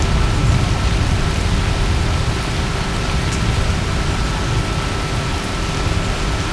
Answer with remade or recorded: recorded